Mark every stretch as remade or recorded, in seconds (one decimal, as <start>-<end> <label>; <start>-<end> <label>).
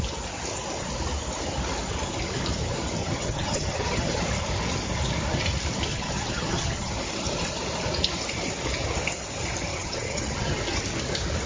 0.0-3.0 recorded; 3.0-4.2 remade; 4.2-5.9 recorded; 5.9-6.9 remade; 6.9-9.7 recorded; 9.7-10.6 remade; 10.6-11.5 recorded